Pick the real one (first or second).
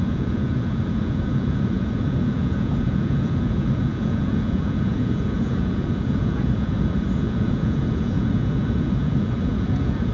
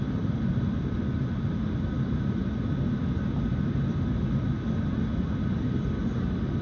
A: second